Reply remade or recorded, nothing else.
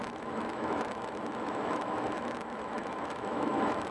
remade